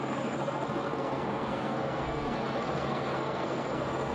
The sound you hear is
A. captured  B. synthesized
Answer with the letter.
B